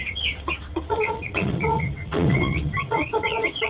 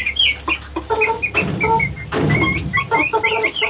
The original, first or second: second